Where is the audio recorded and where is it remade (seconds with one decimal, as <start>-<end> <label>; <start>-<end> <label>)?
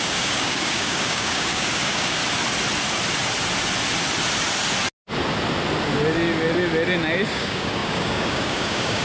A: 0.0-2.2 remade; 2.2-7.3 recorded; 7.3-9.0 remade